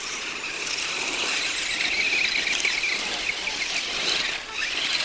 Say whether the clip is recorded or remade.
recorded